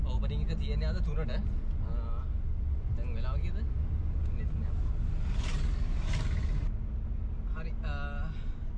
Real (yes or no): yes